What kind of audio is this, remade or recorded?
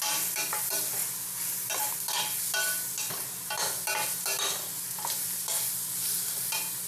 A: recorded